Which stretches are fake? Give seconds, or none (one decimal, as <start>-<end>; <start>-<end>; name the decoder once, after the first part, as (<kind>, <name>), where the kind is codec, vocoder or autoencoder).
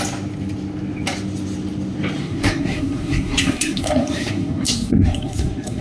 2.2-5.8 (codec, SNAC)